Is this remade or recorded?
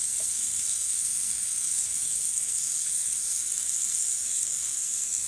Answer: remade